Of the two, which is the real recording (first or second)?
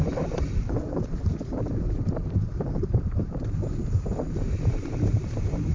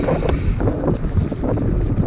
second